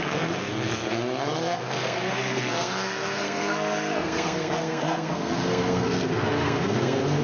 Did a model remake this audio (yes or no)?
yes